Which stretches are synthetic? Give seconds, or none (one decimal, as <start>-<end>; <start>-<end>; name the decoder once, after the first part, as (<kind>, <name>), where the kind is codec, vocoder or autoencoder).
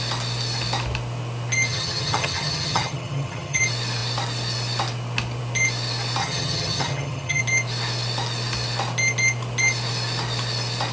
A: 1.7-3.6 (vocoder, HiFi-GAN); 6.2-7.4